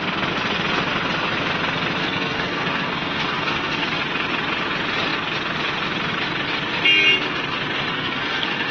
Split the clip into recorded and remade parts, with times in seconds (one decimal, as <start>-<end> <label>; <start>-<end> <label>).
0.0-2.0 recorded; 2.0-4.0 remade; 4.0-7.9 recorded; 7.9-8.7 remade